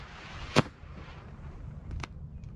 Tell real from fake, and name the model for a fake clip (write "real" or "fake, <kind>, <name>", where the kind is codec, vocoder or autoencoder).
real